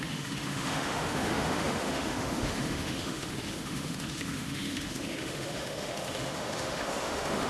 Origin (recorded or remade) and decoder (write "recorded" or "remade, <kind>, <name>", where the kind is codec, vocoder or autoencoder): remade, autoencoder, DAC-VAE